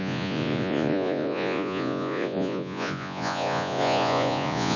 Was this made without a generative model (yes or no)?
no